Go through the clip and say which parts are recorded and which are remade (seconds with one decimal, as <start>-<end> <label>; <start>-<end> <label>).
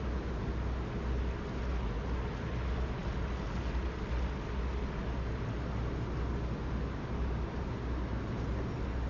0.0-9.1 recorded